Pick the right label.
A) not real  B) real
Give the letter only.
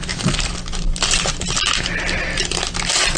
B